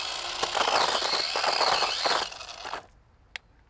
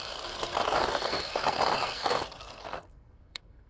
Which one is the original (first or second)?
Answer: first